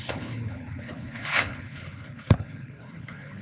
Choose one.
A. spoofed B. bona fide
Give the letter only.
A